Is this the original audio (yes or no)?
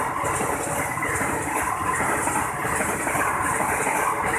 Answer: yes